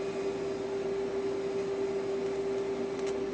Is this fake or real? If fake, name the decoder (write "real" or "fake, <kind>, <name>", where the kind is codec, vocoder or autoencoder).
real